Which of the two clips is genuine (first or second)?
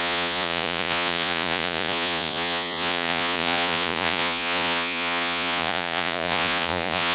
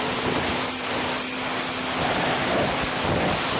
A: second